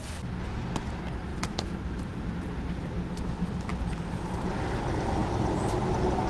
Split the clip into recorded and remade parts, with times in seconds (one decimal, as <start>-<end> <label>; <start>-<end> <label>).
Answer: 0.0-1.3 recorded; 1.3-2.1 remade; 2.1-3.7 recorded; 3.7-4.5 remade; 4.5-5.2 recorded; 5.2-5.8 remade; 5.8-6.3 recorded